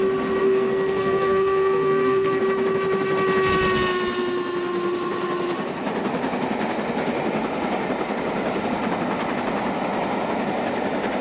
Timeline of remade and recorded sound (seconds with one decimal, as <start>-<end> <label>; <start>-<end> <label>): 0.0-0.4 recorded; 0.4-2.4 remade; 2.4-11.2 recorded